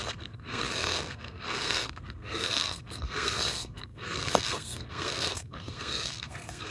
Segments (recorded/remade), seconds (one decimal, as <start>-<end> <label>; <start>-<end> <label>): 0.0-6.7 remade